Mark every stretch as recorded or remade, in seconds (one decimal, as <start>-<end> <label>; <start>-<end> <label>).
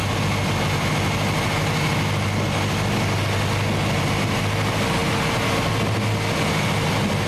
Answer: 0.0-7.3 recorded